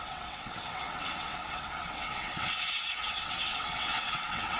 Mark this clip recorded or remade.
remade